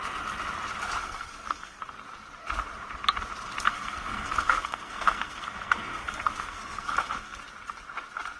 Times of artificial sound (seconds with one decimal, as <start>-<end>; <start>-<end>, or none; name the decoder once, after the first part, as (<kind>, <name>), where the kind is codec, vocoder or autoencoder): 1.0-1.8 (codec, SNAC); 3.7-7.4